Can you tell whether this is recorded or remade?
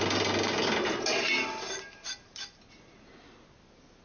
recorded